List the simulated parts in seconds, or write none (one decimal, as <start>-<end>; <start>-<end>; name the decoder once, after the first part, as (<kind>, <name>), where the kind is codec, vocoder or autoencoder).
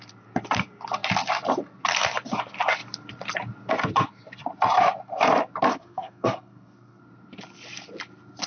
5.7-7.0 (codec, SNAC)